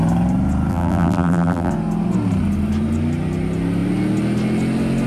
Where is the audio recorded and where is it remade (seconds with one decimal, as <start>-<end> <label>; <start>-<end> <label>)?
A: 0.0-0.7 recorded; 0.7-1.7 remade; 1.7-5.1 recorded